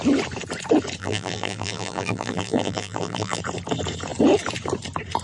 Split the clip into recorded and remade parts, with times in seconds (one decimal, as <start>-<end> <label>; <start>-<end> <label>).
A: 0.0-1.0 recorded; 1.0-3.4 remade; 3.4-5.2 recorded